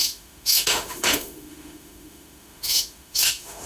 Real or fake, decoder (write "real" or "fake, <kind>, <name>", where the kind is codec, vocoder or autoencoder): fake, autoencoder, DAC-VAE